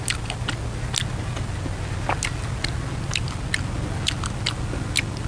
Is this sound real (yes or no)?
yes